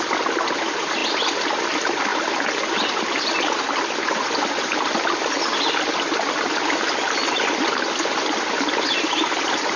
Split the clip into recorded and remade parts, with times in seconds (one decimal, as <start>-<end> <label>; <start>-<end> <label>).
0.0-9.8 recorded

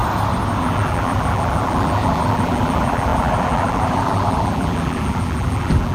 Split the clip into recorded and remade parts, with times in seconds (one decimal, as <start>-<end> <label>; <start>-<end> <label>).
0.0-0.6 recorded; 0.6-5.9 remade

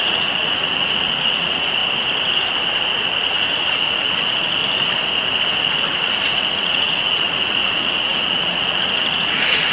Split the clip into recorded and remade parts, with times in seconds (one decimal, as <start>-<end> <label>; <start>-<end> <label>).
0.0-1.8 remade; 1.8-3.0 recorded; 3.0-4.6 remade; 4.6-5.6 recorded; 5.6-9.7 remade

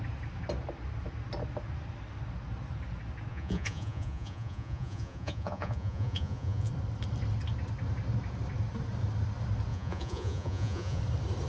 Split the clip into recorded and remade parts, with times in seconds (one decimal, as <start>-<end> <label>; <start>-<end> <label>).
0.0-3.3 recorded; 3.3-6.7 remade; 6.7-9.7 recorded; 9.7-11.0 remade; 11.0-11.5 recorded